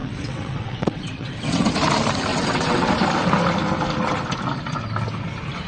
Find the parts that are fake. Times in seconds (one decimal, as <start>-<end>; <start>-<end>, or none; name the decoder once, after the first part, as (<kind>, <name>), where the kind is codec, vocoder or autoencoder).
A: 0.0-1.7 (vocoder, WaveNeXt); 2.3-2.9

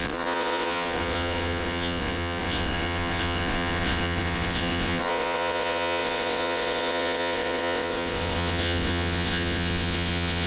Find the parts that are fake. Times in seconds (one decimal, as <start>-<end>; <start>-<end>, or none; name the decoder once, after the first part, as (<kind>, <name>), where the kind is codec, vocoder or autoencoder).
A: 0.0-10.5 (vocoder, WaveNeXt)

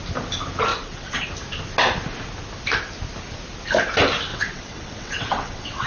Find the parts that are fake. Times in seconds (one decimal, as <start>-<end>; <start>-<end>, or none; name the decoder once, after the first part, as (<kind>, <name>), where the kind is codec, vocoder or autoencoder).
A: 0.7-1.3 (vocoder, WaveNeXt); 4.3-5.9

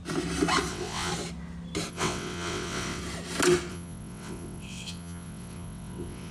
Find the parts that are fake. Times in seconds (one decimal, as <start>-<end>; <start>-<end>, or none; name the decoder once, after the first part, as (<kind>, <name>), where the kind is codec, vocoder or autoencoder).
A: 0.7-1.1 (vocoder, WaveNeXt); 1.9-3.0; 3.7-6.3